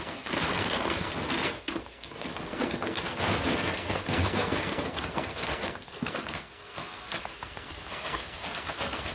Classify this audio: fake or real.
fake